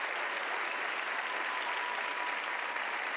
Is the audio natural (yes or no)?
yes